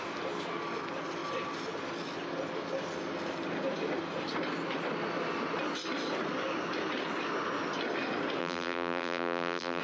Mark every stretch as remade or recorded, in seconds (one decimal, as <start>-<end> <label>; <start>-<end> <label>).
0.0-8.4 recorded; 8.4-9.8 remade